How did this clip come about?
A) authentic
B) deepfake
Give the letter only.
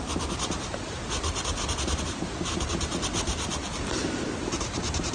A